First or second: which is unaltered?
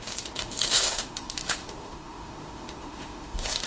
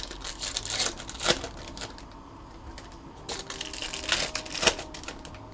second